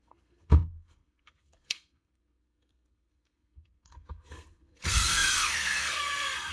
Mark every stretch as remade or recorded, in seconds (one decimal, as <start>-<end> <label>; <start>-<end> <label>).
0.0-6.5 remade